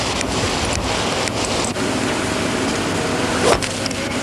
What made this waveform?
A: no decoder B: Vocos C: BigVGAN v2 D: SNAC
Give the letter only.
A